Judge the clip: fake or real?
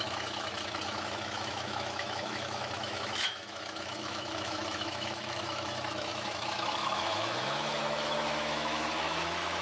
fake